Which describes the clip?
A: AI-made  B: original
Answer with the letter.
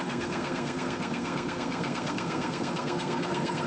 A